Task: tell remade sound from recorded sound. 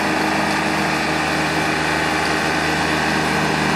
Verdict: recorded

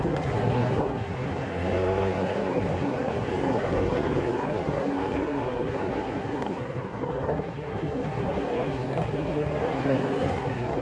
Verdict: remade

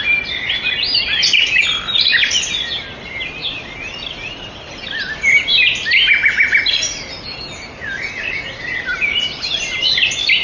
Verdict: recorded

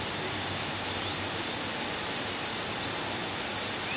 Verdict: recorded